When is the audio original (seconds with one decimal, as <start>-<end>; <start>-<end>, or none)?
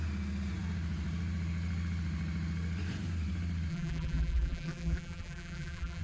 0.0-3.7